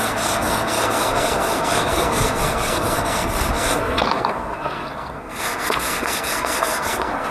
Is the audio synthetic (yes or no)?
yes